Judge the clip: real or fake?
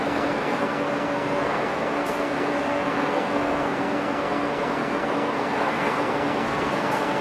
fake